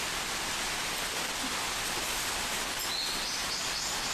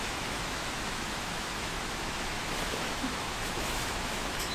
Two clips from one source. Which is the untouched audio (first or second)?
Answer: first